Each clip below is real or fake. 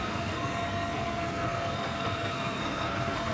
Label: fake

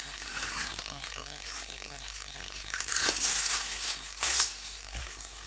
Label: fake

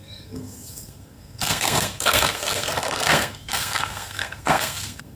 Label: fake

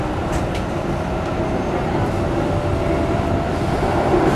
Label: real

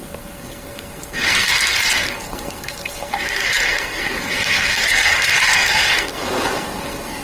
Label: fake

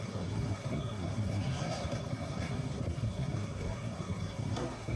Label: fake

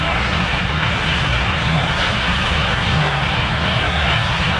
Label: fake